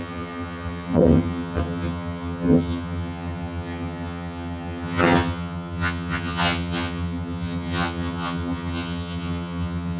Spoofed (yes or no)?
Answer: yes